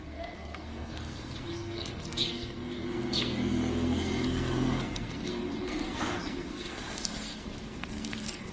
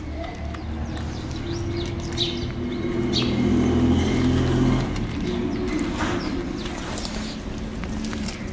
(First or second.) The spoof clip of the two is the first